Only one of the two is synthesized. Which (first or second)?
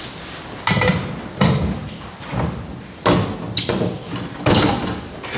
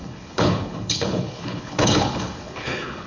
second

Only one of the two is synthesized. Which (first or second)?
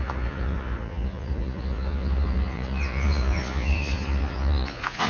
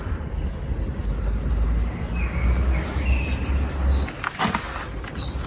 first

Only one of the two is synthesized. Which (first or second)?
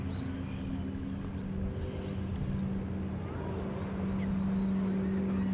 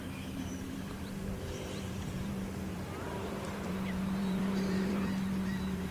second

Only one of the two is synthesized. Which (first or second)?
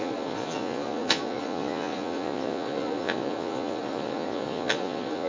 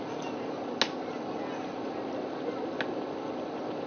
first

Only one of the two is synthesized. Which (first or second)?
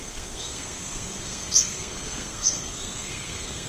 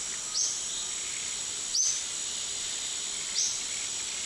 first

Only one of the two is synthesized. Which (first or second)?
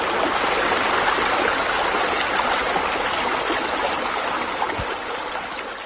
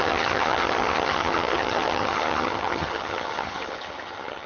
second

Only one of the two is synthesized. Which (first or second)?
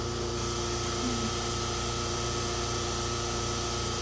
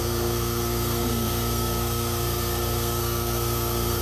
second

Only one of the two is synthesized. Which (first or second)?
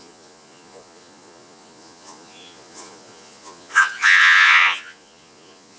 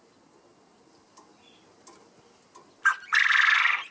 first